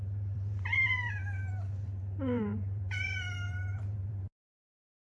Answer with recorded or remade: remade